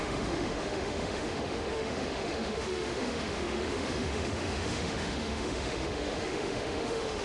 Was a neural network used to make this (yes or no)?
yes